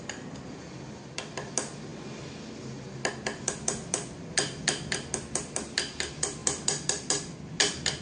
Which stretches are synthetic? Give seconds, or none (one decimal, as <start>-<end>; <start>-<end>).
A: none